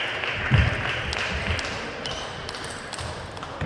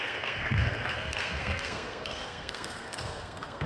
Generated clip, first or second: second